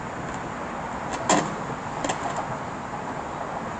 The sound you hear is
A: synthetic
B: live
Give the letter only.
B